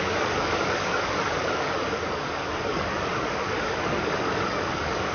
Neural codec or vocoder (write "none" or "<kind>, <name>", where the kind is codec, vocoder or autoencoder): codec, DAC